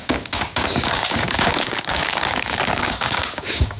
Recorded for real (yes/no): no